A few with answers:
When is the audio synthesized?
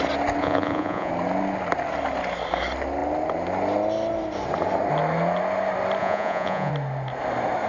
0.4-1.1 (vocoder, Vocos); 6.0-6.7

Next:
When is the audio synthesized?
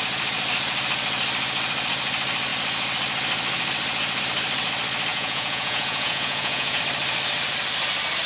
5.1-6.8 (vocoder, Vocos)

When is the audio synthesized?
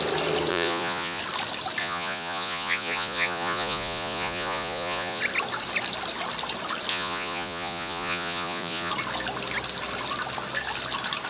0.5-1.2 (vocoder, Vocos); 1.8-5.2; 6.9-8.9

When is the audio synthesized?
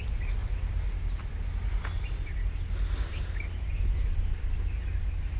none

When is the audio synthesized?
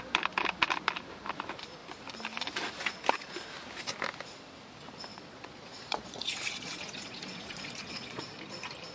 5.1-8.4 (vocoder, Vocos)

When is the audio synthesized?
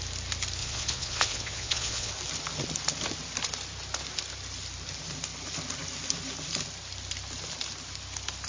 0.6-2.1 (vocoder, Vocos)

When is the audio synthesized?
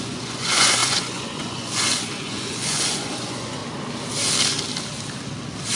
0.0-3.6 (vocoder, Vocos)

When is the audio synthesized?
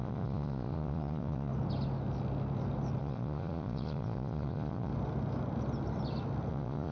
0.0-1.5 (vocoder, Vocos); 3.0-4.9; 6.5-6.9